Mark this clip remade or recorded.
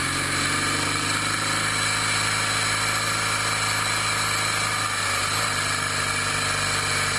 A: recorded